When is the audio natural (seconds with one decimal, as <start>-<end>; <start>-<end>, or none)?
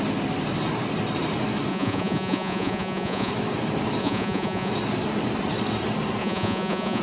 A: 0.0-1.7; 3.3-4.0; 4.7-6.2